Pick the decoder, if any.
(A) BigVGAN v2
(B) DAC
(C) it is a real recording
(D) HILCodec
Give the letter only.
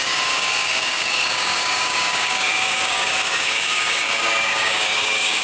B